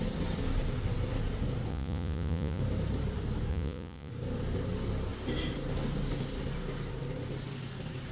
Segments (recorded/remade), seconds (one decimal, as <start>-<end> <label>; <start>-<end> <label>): 0.0-1.7 recorded; 1.7-2.6 remade; 2.6-3.5 recorded; 3.5-4.1 remade; 4.1-8.1 recorded